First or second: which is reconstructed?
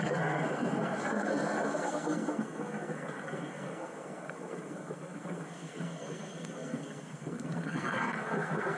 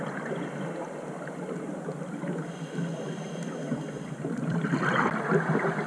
first